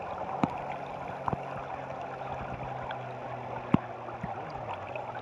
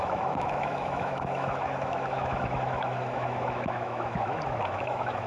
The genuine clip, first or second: first